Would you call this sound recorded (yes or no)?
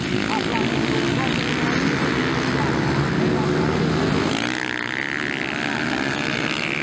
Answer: yes